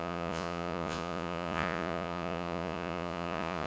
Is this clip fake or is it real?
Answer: fake